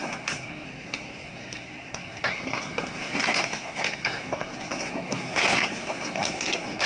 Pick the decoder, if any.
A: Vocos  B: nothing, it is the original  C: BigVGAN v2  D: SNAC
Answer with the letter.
D